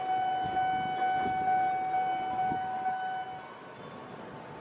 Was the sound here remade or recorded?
recorded